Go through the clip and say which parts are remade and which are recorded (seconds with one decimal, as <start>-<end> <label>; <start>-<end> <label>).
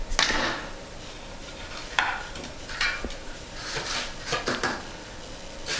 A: 0.0-1.4 recorded; 1.4-3.6 remade; 3.6-5.8 recorded